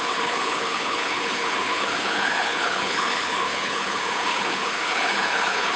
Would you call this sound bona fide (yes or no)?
no